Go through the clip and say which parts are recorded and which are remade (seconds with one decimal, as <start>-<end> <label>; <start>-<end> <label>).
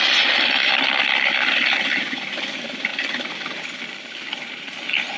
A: 0.0-0.6 recorded; 0.6-1.5 remade; 1.5-5.2 recorded